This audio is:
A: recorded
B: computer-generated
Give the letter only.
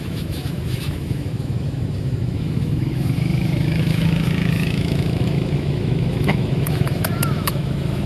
B